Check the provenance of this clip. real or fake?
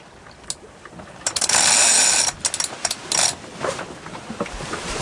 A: real